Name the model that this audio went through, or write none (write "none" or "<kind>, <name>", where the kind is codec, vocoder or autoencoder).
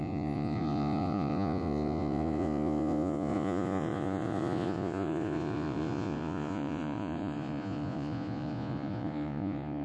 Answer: vocoder, Vocos